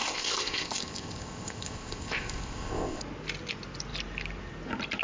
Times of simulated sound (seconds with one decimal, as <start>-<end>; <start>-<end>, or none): 0.0-3.0